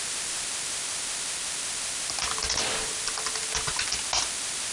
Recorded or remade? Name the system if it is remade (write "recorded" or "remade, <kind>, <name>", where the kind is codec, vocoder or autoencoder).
recorded